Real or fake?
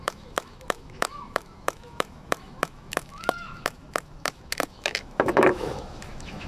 fake